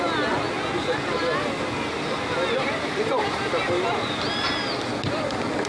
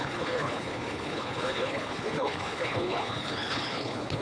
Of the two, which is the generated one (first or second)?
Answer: second